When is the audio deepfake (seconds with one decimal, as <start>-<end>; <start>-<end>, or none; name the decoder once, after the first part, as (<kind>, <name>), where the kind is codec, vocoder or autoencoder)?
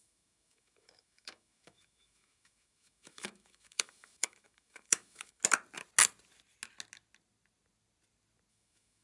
0.0-5.4 (autoencoder, DAC-VAE); 8.5-9.0